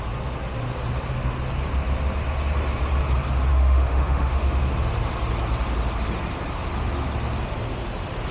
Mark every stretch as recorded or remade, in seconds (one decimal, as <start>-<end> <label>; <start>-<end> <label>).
0.0-3.5 recorded; 3.5-4.6 remade; 4.6-8.3 recorded